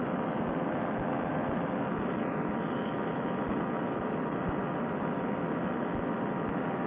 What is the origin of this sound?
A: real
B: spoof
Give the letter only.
A